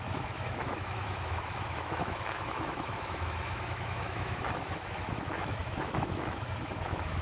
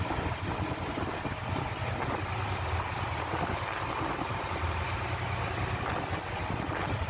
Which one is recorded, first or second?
second